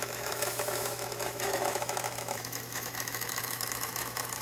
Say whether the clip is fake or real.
fake